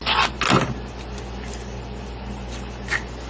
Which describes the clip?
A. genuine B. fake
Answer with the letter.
A